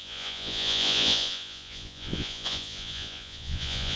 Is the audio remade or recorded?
remade